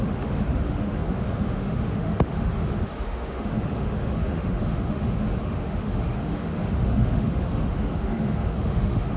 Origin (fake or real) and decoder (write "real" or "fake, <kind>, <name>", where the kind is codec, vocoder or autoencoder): fake, autoencoder, DAC-VAE